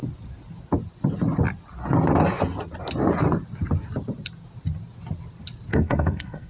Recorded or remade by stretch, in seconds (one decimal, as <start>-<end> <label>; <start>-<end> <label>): 0.0-5.7 recorded; 5.7-6.5 remade